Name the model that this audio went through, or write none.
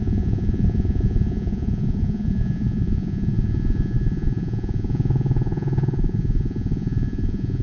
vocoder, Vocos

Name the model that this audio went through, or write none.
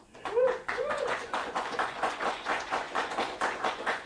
vocoder, Vocos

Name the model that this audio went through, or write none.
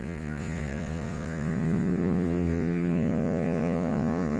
vocoder, Vocos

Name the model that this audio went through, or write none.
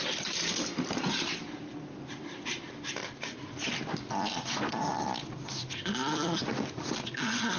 none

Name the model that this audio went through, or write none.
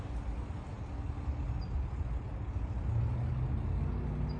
none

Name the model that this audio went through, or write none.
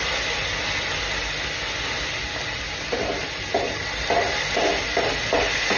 none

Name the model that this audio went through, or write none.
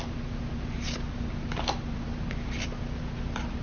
none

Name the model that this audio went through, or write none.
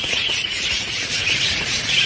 vocoder, Vocos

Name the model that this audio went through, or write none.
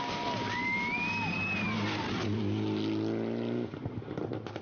none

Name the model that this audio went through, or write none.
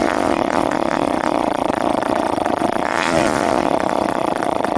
vocoder, Vocos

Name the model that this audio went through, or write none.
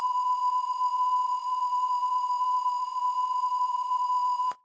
vocoder, Vocos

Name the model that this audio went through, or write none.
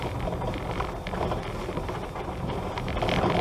none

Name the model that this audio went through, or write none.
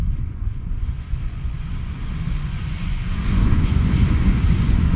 vocoder, Vocos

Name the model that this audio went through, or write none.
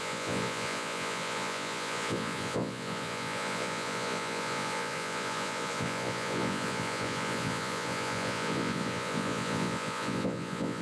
vocoder, Vocos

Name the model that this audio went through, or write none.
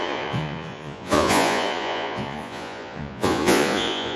vocoder, Vocos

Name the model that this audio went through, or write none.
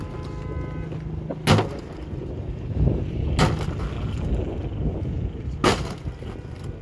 none